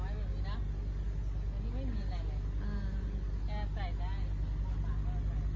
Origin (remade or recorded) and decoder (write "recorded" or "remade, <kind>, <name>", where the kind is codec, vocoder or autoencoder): recorded